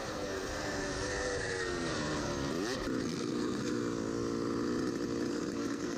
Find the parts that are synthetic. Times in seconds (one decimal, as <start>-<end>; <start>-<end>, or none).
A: 0.0-2.3; 3.0-3.8; 5.3-6.0